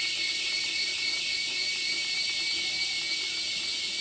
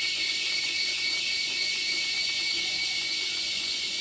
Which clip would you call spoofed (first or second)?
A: second